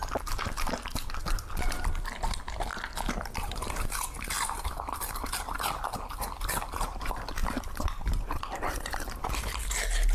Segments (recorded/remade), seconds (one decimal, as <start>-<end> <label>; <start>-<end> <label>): 0.0-7.4 recorded; 7.4-9.2 remade; 9.2-10.1 recorded

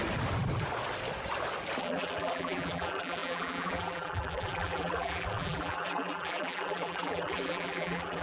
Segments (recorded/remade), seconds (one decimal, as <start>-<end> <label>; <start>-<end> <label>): 0.0-1.8 recorded; 1.8-8.2 remade

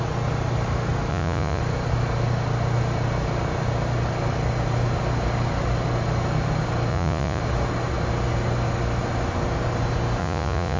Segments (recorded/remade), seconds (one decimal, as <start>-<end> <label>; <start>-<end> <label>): 0.0-1.1 recorded; 1.1-1.6 remade; 1.6-6.9 recorded; 6.9-7.4 remade; 7.4-10.2 recorded; 10.2-10.8 remade

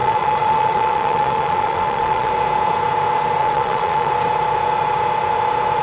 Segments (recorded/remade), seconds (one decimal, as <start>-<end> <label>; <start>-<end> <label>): 0.0-2.3 remade; 2.3-3.4 recorded; 3.4-4.1 remade; 4.1-5.8 recorded

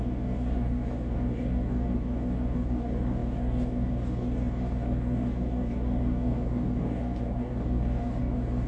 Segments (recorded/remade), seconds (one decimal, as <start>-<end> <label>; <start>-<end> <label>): 0.0-8.7 remade